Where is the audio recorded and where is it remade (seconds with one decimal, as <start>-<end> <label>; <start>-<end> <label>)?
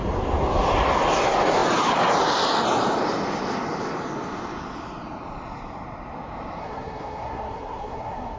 0.0-6.6 recorded; 6.6-8.4 remade